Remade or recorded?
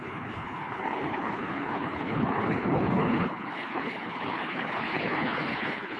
remade